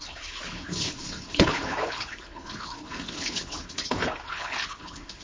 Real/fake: fake